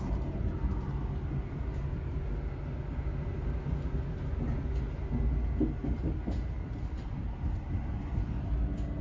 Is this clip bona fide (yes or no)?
yes